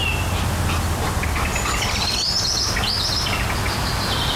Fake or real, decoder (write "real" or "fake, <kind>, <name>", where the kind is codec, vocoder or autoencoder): real